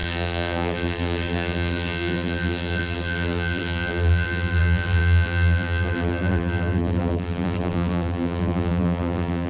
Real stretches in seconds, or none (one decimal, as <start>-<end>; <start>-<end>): none